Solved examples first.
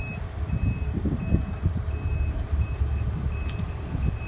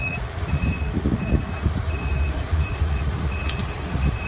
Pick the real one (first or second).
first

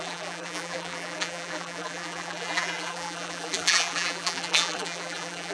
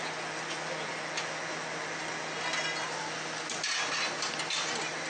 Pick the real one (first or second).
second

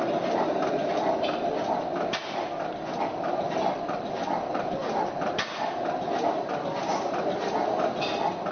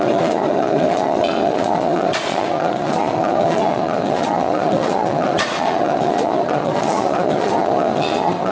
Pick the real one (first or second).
first